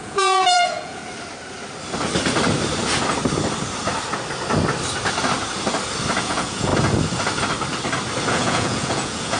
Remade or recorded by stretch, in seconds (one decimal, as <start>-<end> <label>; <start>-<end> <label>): 0.0-1.0 remade; 1.0-6.2 recorded; 6.2-6.7 remade; 6.7-8.3 recorded; 8.3-9.4 remade